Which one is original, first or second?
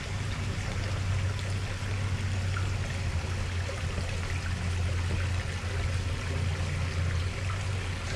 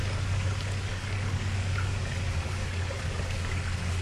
first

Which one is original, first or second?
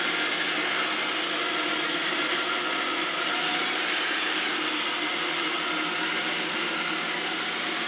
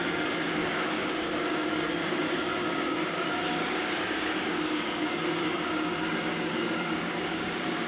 first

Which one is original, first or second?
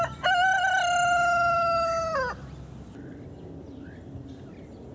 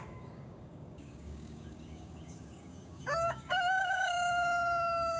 first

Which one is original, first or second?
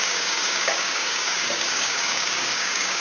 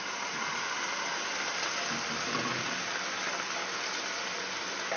second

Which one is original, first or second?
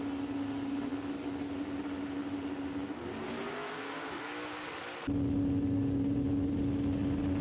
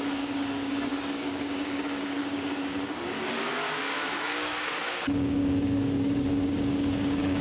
first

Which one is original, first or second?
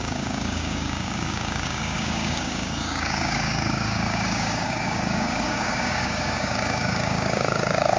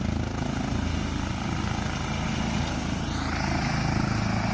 second